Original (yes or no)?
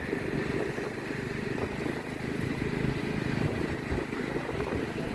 yes